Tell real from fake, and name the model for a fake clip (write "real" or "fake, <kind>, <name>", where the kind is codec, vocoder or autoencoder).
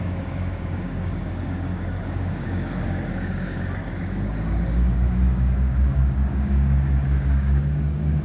fake, codec, DAC